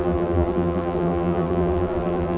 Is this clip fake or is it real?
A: fake